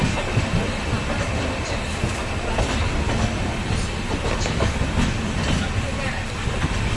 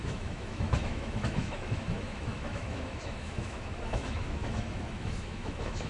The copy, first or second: second